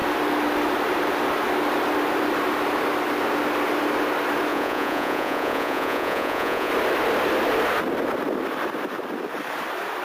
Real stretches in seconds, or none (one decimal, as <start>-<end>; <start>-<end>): 0.0-4.5; 6.7-10.0